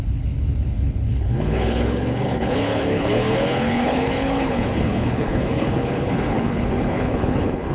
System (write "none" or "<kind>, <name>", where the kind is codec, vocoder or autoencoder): codec, HILCodec